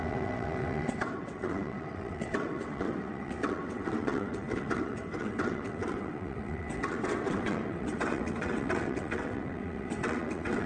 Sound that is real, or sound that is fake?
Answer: fake